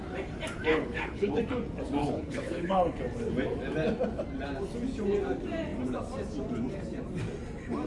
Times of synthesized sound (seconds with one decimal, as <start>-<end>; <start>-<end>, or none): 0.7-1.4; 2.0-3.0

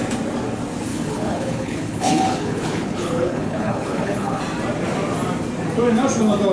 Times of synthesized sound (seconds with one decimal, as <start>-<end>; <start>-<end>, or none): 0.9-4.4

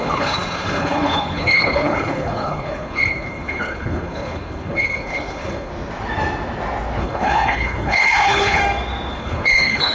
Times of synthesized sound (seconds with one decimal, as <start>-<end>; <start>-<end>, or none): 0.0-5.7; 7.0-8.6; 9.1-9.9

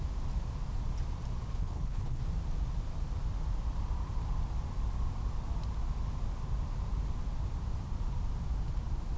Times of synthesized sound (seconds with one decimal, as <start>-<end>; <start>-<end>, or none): 1.5-2.2

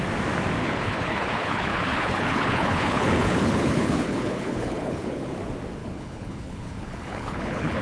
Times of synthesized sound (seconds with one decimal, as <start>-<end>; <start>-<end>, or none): 0.6-5.3; 5.8-7.8

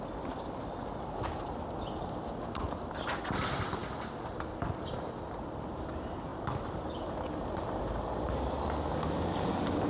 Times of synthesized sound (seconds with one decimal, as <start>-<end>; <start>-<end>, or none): none

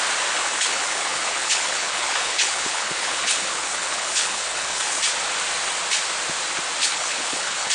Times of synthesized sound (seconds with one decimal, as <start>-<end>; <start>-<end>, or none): 0.4-5.0; 6.8-7.7

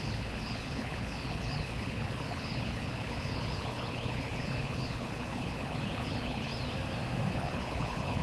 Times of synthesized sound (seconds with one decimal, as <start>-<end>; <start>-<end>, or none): 0.0-6.5; 7.3-8.2